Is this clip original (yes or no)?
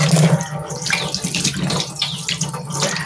yes